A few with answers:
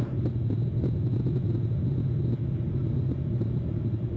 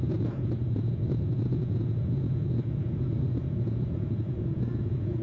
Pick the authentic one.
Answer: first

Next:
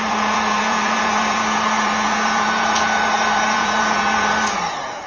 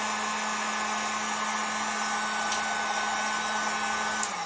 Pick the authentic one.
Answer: second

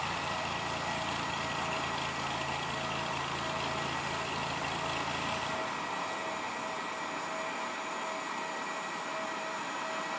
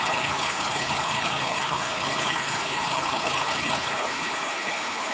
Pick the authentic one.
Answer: first